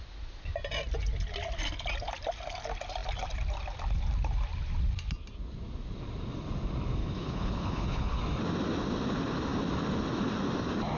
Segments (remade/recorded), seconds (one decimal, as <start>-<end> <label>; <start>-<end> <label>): 0.0-7.0 recorded; 7.0-8.2 remade; 8.2-11.0 recorded